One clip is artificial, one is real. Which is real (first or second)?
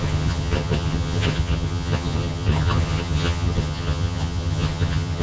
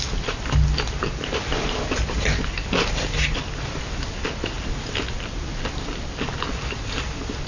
second